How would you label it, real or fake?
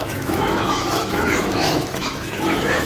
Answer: fake